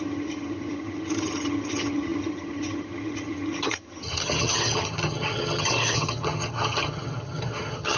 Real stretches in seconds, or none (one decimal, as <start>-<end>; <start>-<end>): none